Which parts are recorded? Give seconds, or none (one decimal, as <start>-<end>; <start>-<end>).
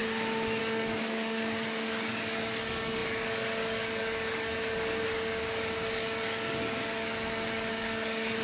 0.0-0.6